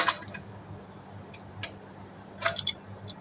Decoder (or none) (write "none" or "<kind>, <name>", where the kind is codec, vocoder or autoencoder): none